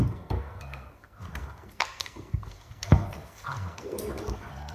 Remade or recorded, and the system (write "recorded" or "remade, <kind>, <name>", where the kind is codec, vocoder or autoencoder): remade, codec, SNAC